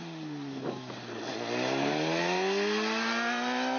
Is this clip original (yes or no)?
yes